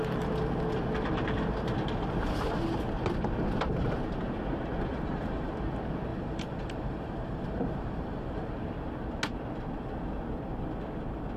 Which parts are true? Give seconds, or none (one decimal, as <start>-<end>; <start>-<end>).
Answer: 0.0-4.9; 5.5-6.1; 8.5-11.4